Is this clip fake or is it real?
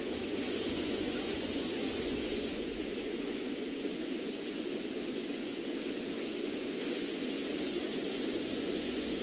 fake